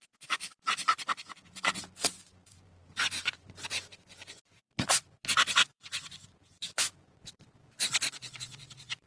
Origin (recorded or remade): remade